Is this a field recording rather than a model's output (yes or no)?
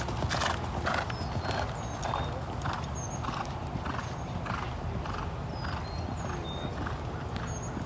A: yes